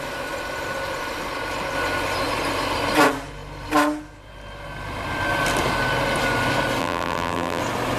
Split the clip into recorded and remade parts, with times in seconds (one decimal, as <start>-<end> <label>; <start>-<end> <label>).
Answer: 0.0-6.8 recorded; 6.8-7.6 remade; 7.6-8.0 recorded